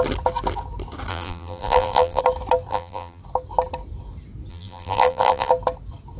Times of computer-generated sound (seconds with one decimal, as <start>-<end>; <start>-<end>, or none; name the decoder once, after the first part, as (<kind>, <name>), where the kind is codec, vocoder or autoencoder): 1.1-2.2 (vocoder, BigVGAN v2); 2.7-3.2; 4.5-5.5